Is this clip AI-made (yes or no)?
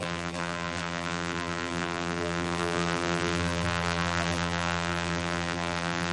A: yes